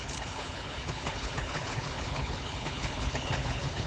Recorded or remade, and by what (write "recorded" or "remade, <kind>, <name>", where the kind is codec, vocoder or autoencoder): remade, codec, HILCodec